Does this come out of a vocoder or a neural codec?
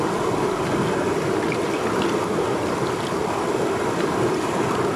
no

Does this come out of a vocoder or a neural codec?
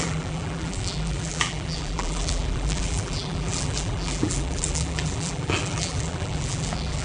yes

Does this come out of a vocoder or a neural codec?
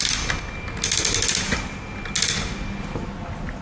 no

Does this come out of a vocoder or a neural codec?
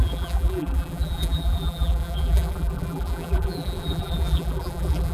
yes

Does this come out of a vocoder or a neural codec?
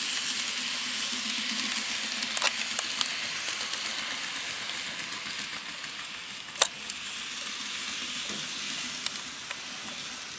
no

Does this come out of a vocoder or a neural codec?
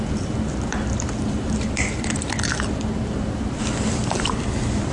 yes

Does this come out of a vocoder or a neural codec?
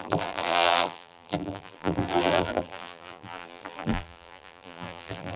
yes